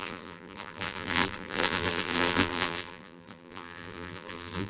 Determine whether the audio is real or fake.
fake